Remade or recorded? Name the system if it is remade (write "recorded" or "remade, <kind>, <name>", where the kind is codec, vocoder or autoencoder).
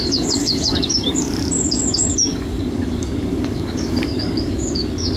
remade, codec, DAC